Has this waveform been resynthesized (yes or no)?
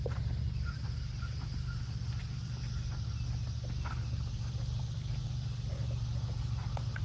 no